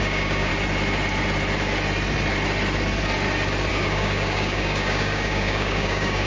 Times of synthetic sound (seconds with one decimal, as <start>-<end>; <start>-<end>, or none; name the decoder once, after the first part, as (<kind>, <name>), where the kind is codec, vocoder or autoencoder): 0.0-0.5 (codec, DAC); 3.7-6.3